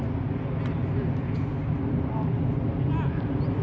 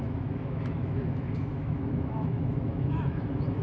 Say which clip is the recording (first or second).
first